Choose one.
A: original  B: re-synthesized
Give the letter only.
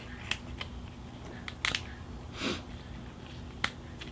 A